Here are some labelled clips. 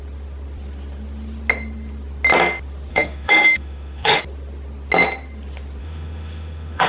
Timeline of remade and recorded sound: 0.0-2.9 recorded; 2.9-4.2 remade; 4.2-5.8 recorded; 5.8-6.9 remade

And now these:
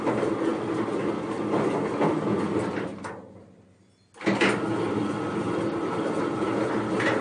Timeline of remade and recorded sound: 0.0-7.2 recorded

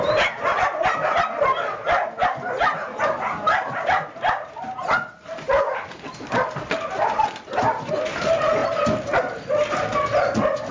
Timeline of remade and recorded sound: 0.0-10.7 recorded